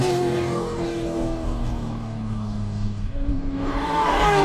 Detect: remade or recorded remade